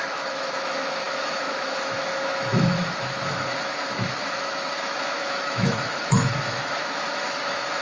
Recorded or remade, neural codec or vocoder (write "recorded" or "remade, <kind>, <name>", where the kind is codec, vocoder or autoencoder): remade, autoencoder, DAC-VAE